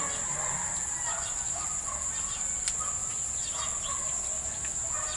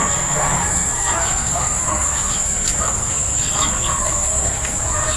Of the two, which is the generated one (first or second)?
second